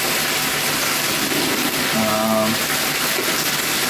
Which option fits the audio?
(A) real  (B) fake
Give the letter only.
A